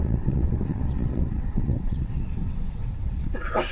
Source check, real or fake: fake